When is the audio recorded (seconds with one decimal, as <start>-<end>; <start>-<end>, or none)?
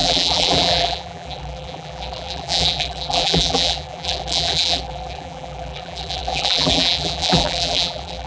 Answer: none